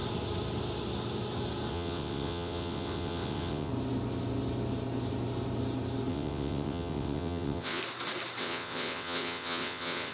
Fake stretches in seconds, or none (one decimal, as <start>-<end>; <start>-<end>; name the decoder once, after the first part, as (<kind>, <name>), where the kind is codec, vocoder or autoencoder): 1.7-3.7 (vocoder, WaveNeXt); 6.1-7.8; 8.4-10.1

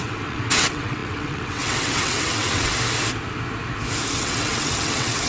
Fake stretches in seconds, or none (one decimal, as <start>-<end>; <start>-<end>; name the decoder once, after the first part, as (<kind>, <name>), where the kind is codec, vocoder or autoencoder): 0.0-2.7 (vocoder, WaveNeXt); 4.1-5.3

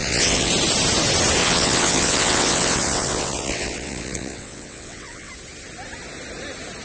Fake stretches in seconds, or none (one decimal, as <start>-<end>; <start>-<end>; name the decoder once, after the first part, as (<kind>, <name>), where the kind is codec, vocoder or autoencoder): 0.0-0.5 (vocoder, WaveNeXt); 1.4-5.3

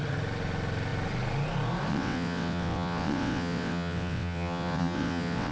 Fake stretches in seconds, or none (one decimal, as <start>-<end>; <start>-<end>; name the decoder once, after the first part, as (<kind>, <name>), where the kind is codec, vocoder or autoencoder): 1.9-5.5 (vocoder, WaveNeXt)

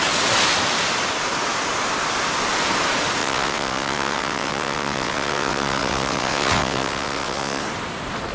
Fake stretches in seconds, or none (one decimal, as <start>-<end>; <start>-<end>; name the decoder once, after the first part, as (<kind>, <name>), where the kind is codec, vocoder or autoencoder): 3.2-7.6 (vocoder, WaveNeXt)